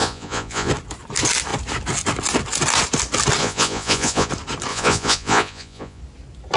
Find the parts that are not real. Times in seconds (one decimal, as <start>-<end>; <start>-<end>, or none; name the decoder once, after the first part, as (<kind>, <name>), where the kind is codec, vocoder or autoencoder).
0.0-0.7 (vocoder, Vocos); 3.4-4.3; 4.7-6.0